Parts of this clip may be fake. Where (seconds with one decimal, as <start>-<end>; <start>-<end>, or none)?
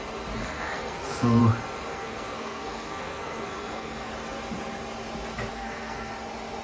0.4-1.4; 1.9-4.1; 5.5-6.1